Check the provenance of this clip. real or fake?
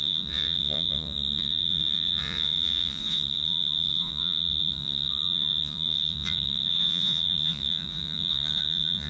fake